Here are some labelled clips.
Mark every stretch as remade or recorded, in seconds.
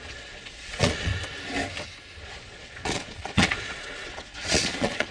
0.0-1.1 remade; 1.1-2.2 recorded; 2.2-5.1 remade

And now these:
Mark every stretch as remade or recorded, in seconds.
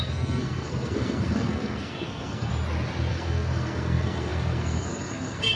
0.0-2.5 remade; 2.5-3.1 recorded; 3.1-5.6 remade